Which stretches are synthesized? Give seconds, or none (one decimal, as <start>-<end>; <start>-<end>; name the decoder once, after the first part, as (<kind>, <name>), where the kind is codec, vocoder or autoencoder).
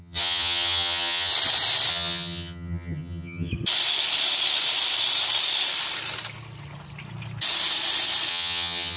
0.0-1.3 (vocoder, HiFi-GAN); 1.9-3.5; 8.3-9.0